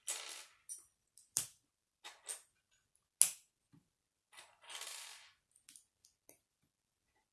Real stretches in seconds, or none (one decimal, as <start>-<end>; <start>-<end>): 0.0-0.7; 2.2-7.3